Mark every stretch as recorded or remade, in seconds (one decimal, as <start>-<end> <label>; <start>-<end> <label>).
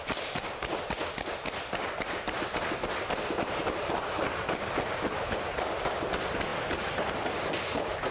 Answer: 0.0-8.1 recorded